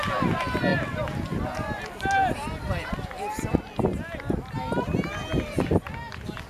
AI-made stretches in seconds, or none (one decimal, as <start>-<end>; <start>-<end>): none

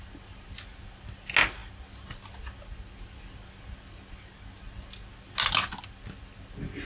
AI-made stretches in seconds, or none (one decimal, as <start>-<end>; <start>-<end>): none

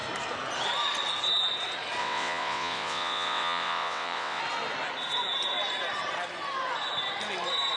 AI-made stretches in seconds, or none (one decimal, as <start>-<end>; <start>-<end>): 2.0-4.4

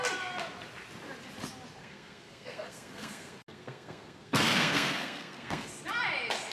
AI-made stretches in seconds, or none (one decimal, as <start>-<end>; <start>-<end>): 1.8-5.7

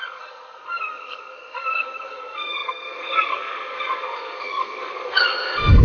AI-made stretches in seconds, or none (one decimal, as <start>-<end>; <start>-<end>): 0.0-5.8

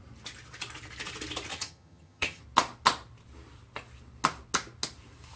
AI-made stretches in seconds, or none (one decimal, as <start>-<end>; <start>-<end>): 1.5-2.4

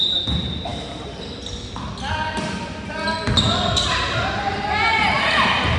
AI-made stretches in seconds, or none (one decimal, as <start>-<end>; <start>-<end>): none